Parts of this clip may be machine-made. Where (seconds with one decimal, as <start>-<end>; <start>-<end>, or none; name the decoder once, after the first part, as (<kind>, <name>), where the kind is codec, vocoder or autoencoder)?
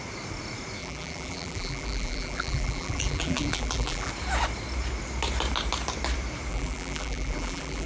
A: 0.8-4.1 (vocoder, BigVGAN v2); 6.5-7.9